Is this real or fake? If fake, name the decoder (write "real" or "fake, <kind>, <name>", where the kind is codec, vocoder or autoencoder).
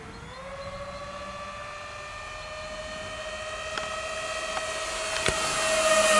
real